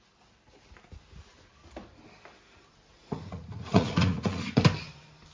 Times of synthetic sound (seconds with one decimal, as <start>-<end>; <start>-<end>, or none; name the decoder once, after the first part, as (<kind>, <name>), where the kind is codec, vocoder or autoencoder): 3.0-4.6 (vocoder, Vocos)